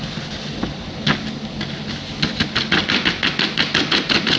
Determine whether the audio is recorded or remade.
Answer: recorded